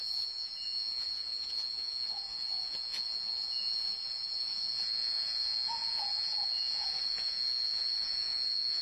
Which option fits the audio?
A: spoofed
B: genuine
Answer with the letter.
A